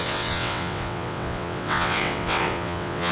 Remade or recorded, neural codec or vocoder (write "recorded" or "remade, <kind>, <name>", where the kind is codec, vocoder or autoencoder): remade, vocoder, WaveNeXt